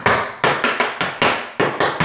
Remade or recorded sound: recorded